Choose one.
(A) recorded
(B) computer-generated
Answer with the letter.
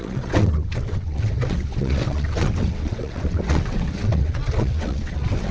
B